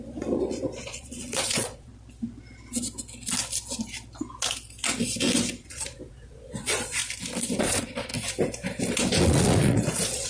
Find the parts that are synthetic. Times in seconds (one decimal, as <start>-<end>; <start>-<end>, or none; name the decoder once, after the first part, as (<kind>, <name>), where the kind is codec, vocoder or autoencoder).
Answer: 0.0-1.9 (vocoder, Vocos); 5.6-7.0; 7.6-8.1; 9.2-10.3